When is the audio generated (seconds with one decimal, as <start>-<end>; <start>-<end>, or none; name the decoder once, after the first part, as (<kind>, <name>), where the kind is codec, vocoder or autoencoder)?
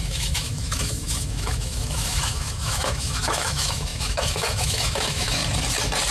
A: 0.0-5.4 (autoencoder, DAC-VAE)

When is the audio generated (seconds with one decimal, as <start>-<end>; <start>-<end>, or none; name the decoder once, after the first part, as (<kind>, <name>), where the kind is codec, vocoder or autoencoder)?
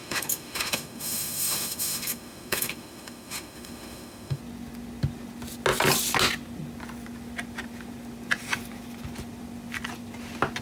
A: 0.0-4.4 (autoencoder, DAC-VAE)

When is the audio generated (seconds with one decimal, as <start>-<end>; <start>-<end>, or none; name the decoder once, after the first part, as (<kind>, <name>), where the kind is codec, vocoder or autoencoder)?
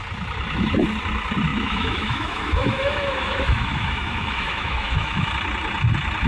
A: 1.5-5.3 (autoencoder, DAC-VAE)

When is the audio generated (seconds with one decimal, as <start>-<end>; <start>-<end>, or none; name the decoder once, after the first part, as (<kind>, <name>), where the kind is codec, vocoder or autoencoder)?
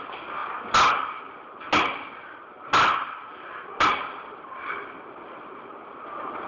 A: none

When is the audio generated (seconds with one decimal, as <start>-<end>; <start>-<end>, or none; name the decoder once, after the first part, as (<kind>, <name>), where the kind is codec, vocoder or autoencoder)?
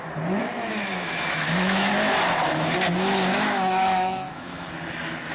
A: 0.4-1.9 (autoencoder, DAC-VAE); 3.3-4.7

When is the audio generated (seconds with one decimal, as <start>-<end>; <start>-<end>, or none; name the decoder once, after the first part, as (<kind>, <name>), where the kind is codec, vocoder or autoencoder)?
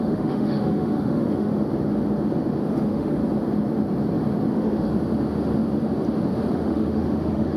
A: 0.0-1.5 (autoencoder, DAC-VAE); 2.6-3.2; 4.5-4.9; 6.5-7.6